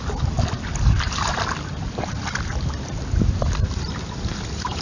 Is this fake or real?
real